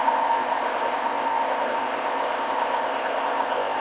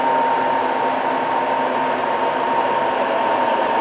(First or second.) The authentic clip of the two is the second